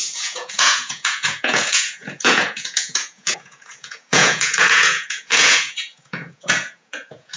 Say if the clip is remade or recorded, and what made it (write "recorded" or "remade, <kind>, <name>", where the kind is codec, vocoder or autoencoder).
remade, vocoder, Vocos